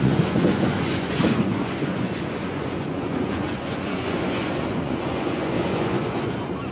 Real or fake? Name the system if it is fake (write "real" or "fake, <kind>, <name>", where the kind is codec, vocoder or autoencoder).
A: fake, vocoder, Vocos